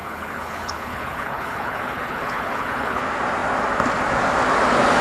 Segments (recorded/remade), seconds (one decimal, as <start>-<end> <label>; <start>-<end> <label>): 0.0-3.0 remade; 3.0-5.0 recorded